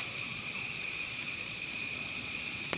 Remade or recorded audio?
remade